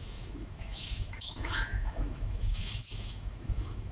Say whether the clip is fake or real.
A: fake